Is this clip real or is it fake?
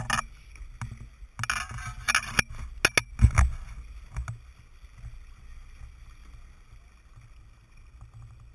real